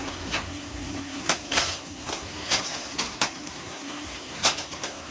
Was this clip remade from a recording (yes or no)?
yes